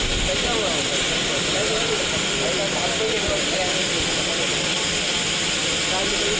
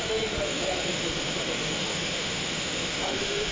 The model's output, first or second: second